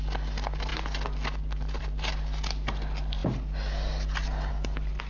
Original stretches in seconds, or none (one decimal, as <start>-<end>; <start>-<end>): 0.0-5.1